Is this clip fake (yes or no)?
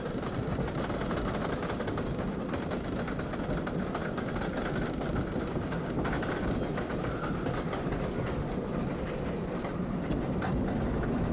no